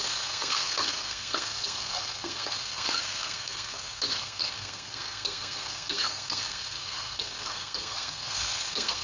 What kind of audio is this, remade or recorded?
remade